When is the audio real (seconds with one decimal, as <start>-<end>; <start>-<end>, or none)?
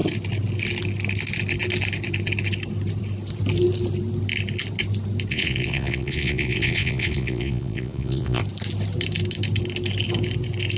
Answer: 0.0-5.3; 8.4-10.8